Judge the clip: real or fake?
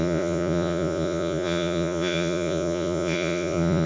fake